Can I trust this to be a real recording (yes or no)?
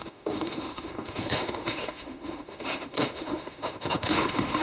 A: no